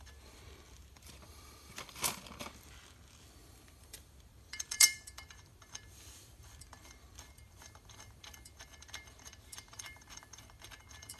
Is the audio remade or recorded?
remade